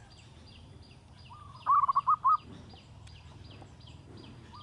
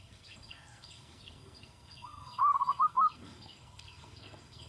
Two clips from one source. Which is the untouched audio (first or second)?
first